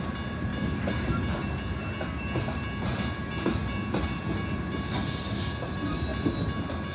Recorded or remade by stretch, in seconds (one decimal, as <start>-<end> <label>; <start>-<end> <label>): 0.0-6.9 recorded